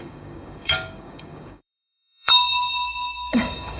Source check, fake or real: fake